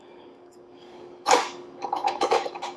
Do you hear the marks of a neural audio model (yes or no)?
yes